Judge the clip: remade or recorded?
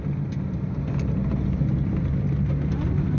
recorded